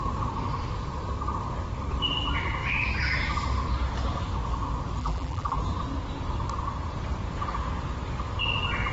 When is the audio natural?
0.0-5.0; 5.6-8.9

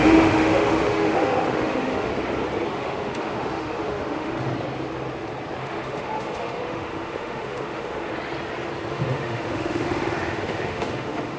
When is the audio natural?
2.1-2.7; 4.5-5.6; 8.1-8.9

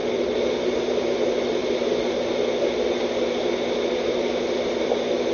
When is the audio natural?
0.0-5.3

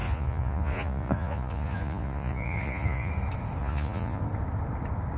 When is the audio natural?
3.1-3.6; 4.2-5.2